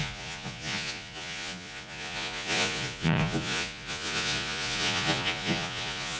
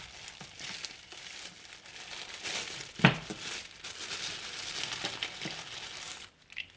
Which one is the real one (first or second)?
second